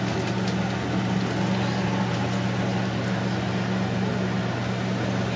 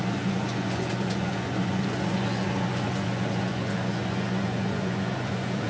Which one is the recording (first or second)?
first